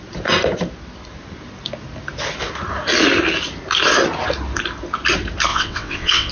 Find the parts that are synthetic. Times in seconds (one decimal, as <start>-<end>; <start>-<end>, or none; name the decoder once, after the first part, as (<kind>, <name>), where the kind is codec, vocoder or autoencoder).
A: 5.5-6.3 (vocoder, WaveNeXt)

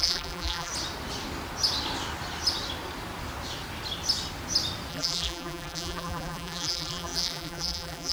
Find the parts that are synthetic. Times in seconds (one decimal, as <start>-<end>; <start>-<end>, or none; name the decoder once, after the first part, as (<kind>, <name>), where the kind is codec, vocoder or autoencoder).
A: 0.0-0.7 (vocoder, BigVGAN v2); 4.9-8.1

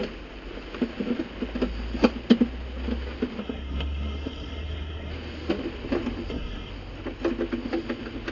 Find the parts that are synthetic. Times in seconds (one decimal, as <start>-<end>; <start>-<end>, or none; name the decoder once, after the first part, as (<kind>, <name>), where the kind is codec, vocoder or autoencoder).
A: 3.4-5.1 (codec, SNAC); 6.3-6.7

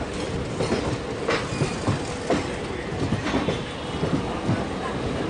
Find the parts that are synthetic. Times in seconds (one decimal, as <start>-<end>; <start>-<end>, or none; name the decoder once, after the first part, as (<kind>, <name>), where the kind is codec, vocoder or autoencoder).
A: none

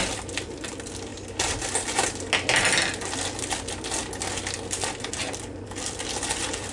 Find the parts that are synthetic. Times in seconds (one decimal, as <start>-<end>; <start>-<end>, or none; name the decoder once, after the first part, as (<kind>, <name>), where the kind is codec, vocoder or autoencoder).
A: 0.0-1.1 (vocoder, BigVGAN v2); 5.1-6.7